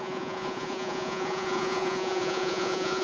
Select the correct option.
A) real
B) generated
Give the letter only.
B